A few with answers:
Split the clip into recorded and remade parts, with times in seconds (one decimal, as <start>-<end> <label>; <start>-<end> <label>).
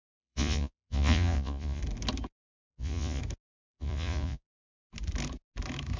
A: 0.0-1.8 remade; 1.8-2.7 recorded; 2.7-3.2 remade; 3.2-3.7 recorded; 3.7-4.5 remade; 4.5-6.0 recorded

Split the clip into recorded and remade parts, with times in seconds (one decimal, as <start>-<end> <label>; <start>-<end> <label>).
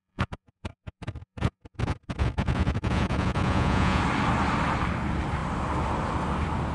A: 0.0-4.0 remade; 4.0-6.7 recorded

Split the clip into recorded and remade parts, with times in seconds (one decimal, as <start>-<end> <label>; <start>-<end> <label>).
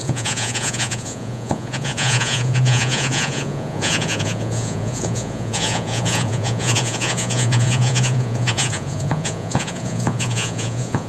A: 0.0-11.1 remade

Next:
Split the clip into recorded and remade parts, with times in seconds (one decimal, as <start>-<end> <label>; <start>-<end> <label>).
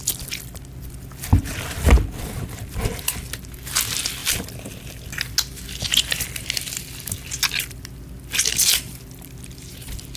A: 0.0-10.2 recorded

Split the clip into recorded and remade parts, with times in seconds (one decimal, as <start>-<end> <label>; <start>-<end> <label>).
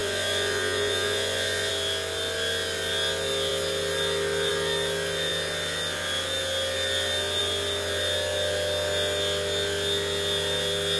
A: 0.0-1.7 remade; 1.7-11.0 recorded